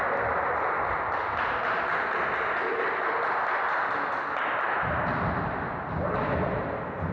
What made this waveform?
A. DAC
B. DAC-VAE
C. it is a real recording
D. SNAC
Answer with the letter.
C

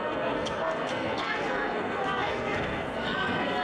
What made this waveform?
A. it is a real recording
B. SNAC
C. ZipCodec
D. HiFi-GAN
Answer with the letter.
B